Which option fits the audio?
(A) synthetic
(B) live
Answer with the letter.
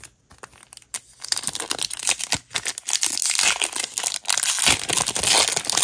B